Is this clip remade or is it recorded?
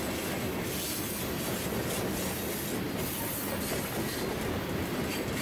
recorded